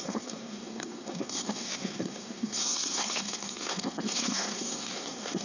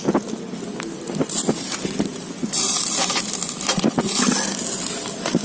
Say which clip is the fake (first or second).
first